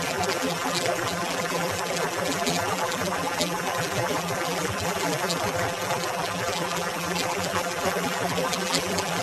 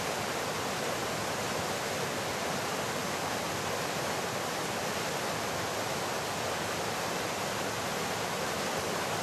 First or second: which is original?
second